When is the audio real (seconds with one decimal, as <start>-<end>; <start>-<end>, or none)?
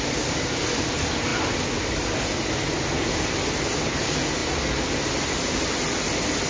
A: 0.0-6.5